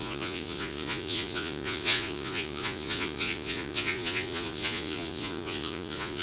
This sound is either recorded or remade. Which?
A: remade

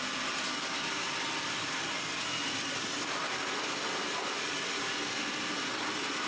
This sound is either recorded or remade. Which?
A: recorded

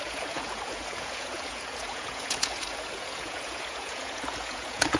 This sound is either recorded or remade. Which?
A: remade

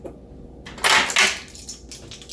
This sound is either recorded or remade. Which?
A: recorded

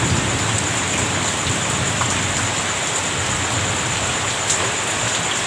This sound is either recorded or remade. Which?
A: recorded